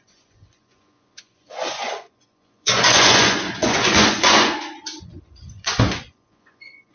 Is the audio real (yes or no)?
no